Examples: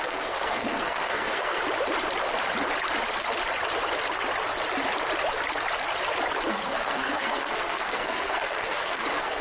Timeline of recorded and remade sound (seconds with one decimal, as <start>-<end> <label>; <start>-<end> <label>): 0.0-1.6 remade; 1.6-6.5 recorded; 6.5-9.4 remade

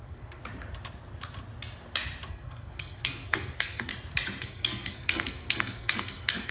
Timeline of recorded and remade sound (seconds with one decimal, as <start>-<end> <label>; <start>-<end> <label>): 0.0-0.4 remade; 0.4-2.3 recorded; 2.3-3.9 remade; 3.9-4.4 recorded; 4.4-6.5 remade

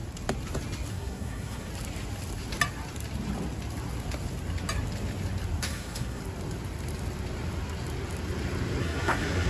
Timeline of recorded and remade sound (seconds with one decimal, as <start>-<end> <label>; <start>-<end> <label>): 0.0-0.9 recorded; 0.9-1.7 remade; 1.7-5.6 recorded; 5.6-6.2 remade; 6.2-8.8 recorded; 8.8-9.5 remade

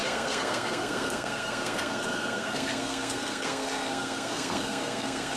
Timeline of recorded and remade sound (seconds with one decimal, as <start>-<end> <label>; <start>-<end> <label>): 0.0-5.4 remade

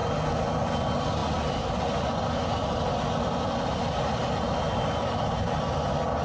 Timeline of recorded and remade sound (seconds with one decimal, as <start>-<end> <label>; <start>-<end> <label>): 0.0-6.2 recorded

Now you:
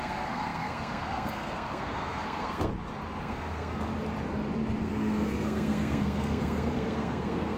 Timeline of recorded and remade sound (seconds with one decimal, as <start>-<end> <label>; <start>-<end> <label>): 0.0-2.7 remade; 2.7-3.2 recorded; 3.2-3.9 remade; 3.9-4.8 recorded; 4.8-7.6 remade

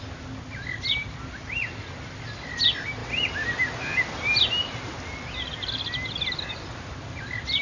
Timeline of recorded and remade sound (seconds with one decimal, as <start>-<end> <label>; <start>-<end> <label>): 0.0-7.6 recorded